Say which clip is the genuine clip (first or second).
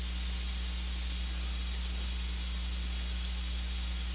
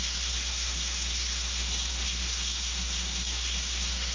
first